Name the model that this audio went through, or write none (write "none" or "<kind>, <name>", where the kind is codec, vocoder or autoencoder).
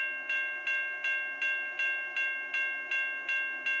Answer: none